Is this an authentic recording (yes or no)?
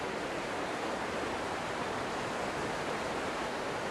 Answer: yes